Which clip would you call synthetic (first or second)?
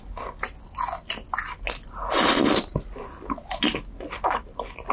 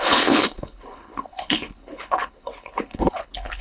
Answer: second